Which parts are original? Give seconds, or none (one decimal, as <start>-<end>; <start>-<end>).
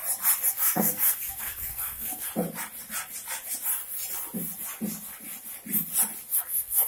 0.0-0.5; 2.3-6.4